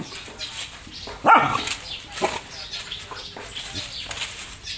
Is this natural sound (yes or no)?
yes